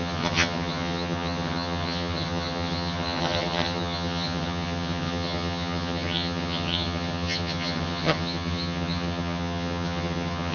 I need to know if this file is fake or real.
fake